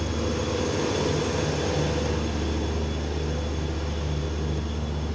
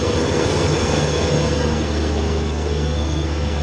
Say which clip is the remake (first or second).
second